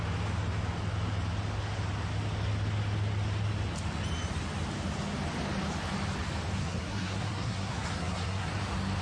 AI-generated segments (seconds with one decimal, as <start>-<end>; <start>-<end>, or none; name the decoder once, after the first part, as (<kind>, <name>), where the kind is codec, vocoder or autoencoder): 6.6-8.5 (codec, SNAC)